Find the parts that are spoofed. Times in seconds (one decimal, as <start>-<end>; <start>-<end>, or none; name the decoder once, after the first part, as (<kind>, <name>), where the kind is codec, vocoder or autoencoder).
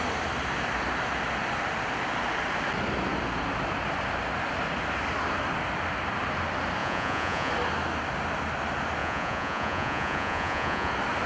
6.8-7.5 (vocoder, Vocos); 9.0-10.9